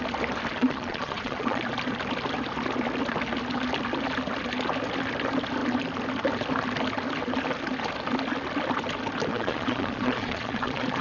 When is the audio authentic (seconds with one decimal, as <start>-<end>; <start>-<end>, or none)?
0.0-0.6; 1.6-9.3

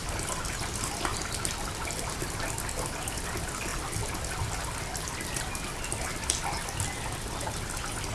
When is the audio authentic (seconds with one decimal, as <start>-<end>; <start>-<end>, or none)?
0.0-8.1

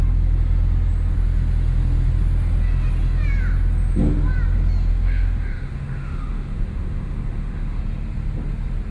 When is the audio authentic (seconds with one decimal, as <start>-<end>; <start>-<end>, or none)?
0.0-4.9; 7.8-8.9

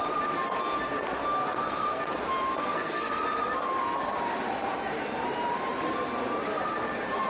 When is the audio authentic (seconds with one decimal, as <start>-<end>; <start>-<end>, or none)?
0.0-1.5; 2.0-2.6; 3.2-7.3

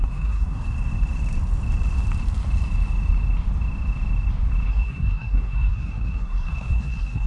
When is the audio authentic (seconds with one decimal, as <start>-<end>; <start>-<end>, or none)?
0.6-4.7

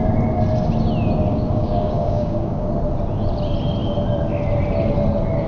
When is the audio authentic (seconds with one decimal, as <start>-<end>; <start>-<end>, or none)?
0.0-1.3; 2.7-5.5

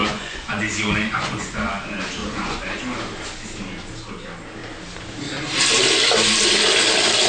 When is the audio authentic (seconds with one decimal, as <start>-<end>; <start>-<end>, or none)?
1.7-2.2; 2.8-7.3

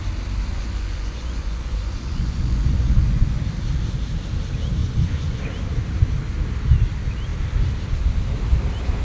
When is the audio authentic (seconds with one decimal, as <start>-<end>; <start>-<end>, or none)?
0.0-0.5; 3.4-4.8; 5.4-9.0